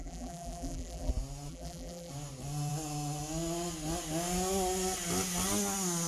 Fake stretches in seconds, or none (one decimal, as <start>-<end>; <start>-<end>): 0.0-1.1; 1.5-2.1